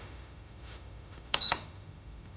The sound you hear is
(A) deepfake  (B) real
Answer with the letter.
A